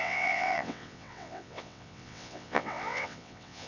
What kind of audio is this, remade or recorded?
remade